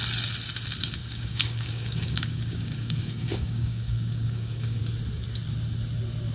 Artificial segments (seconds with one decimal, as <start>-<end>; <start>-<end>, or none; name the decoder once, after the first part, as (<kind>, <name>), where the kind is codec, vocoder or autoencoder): 1.0-4.8 (codec, DAC)